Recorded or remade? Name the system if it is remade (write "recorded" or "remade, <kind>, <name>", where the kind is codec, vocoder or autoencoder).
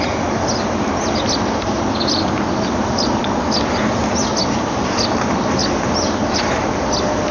recorded